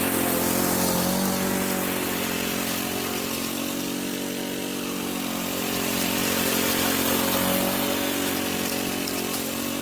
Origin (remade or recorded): recorded